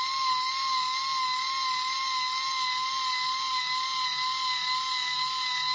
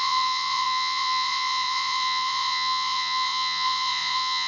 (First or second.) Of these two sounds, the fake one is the second